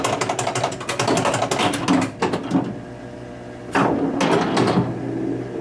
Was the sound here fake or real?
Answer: real